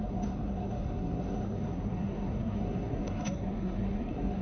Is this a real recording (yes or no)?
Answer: no